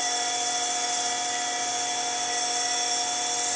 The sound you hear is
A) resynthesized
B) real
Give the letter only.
B